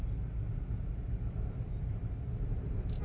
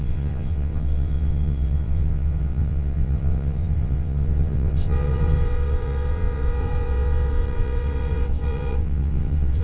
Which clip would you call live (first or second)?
first